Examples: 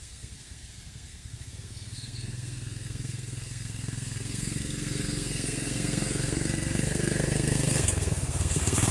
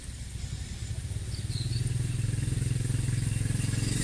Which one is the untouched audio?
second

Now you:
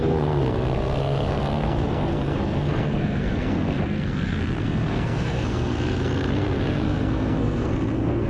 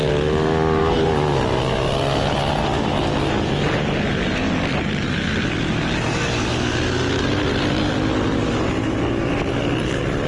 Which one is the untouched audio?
second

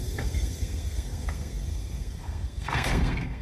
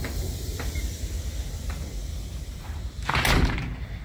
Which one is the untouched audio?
second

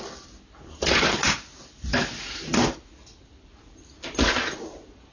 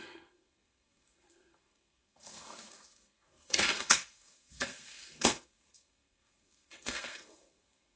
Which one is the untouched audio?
first